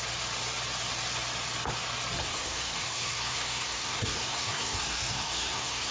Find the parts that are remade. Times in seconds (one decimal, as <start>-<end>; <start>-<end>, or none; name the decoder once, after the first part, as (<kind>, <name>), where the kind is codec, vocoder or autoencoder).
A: 2.2-5.9 (codec, SNAC)